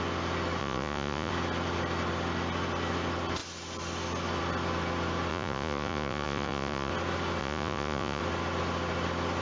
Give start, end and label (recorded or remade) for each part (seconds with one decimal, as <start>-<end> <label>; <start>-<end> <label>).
0.0-0.6 recorded; 0.6-1.3 remade; 1.3-5.3 recorded; 5.3-6.9 remade; 6.9-7.4 recorded; 7.4-8.2 remade; 8.2-9.4 recorded